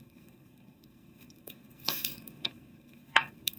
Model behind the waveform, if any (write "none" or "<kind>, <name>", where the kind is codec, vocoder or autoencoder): codec, SNAC